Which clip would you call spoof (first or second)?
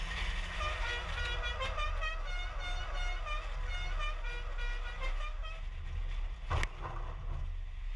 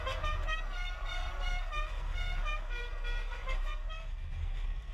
second